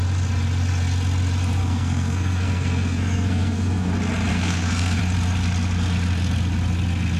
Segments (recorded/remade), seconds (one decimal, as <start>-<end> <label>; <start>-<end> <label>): 0.0-1.6 recorded; 1.6-3.9 remade; 3.9-4.3 recorded; 4.3-5.0 remade; 5.0-7.2 recorded